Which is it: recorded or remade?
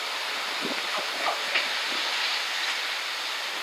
remade